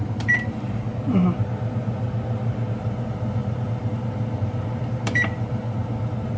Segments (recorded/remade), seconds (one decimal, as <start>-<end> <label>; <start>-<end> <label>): 0.0-6.4 remade